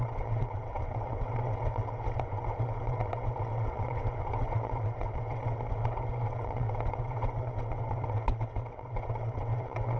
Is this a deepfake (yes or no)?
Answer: yes